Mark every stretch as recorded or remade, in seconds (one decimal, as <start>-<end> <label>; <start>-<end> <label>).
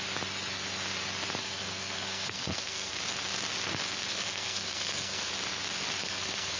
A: 0.0-1.4 recorded; 1.4-2.9 remade; 2.9-4.1 recorded; 4.1-5.3 remade; 5.3-6.0 recorded; 6.0-6.6 remade